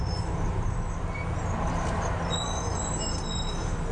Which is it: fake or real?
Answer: real